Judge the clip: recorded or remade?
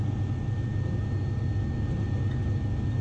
recorded